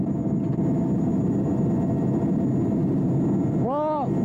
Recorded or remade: recorded